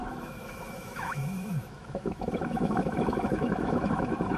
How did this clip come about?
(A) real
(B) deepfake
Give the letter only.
B